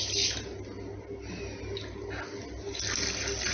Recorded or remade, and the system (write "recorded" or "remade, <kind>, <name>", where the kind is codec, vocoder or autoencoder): recorded